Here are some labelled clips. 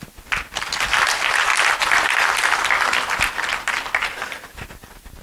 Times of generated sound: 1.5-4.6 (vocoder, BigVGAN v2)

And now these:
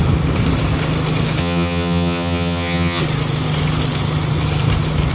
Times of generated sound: 1.4-3.0 (vocoder, HiFi-GAN)

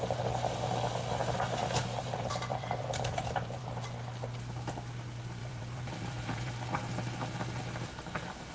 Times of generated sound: 1.6-3.6 (vocoder, BigVGAN v2); 5.4-6.5

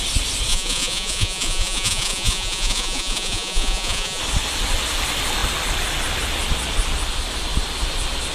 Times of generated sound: 0.5-4.2 (vocoder, Vocos)

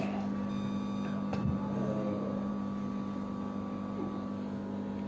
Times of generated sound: none